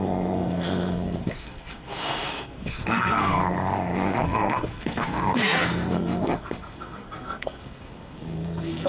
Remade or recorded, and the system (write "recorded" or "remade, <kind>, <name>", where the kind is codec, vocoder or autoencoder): remade, codec, SNAC